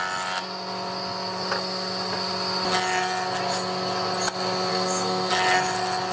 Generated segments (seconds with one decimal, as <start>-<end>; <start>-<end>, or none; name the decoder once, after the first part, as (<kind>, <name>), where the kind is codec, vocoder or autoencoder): 4.7-5.3 (codec, SNAC)